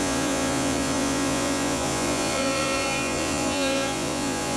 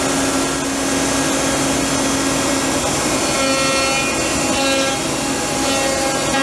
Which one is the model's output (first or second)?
first